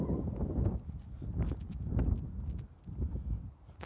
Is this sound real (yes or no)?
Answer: yes